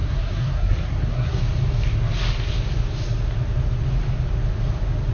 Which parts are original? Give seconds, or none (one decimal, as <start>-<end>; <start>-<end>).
1.4-5.1